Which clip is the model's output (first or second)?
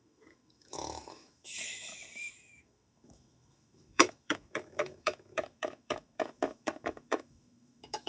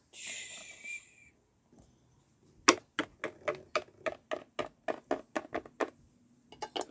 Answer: first